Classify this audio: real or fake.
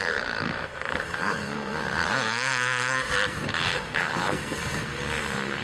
fake